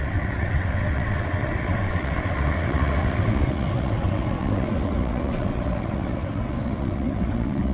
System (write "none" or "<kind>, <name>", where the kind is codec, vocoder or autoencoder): vocoder, WaveNeXt